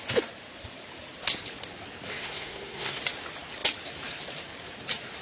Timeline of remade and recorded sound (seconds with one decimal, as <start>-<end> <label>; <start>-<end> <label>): 0.0-2.1 recorded; 2.1-3.0 remade; 3.0-5.2 recorded